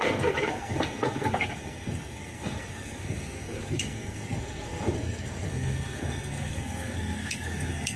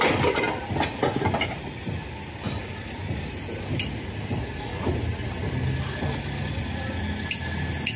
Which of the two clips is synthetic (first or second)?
first